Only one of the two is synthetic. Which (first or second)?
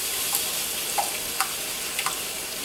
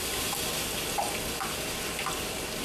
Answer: first